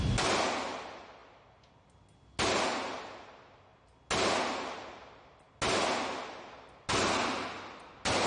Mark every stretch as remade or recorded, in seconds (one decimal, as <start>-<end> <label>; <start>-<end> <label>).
0.0-8.3 recorded

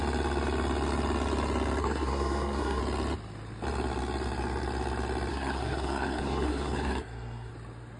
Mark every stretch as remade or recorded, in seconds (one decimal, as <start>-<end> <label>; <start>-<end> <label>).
0.0-1.8 recorded; 1.8-2.8 remade; 2.8-5.3 recorded; 5.3-7.5 remade; 7.5-8.0 recorded

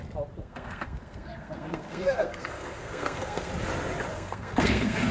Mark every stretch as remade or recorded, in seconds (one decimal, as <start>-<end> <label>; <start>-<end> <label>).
0.0-0.4 recorded; 0.4-3.5 remade; 3.5-4.1 recorded; 4.1-5.1 remade

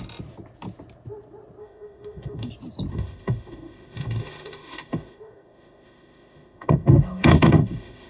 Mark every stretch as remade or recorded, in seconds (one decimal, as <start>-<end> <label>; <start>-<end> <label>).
0.0-1.6 recorded; 1.6-2.5 remade; 2.5-2.9 recorded; 2.9-8.1 remade